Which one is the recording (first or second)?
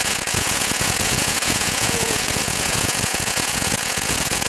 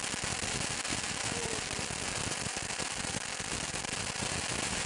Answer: second